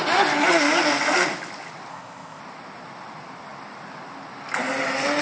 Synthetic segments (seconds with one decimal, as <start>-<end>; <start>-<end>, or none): 1.9-2.4

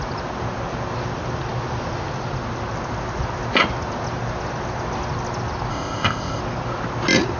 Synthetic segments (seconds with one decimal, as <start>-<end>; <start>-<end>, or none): 5.7-6.4

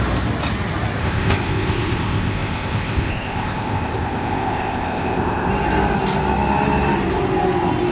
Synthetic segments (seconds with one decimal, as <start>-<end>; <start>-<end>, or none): 1.0-5.5

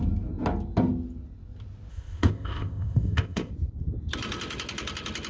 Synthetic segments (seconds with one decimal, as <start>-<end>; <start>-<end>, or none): 1.9-3.5

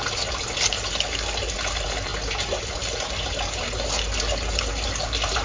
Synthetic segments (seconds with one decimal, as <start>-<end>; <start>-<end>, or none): none

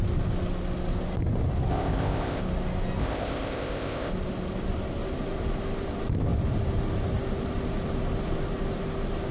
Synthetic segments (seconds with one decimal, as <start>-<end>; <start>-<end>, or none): 1.7-2.4; 3.0-4.1